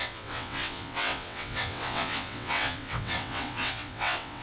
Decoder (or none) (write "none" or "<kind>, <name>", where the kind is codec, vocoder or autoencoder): vocoder, WaveNeXt